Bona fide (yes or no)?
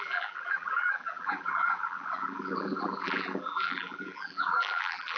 no